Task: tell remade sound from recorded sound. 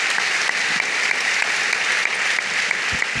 recorded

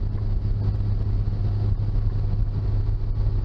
recorded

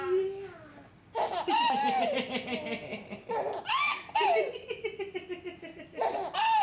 recorded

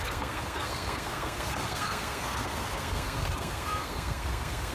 remade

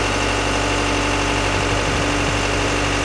recorded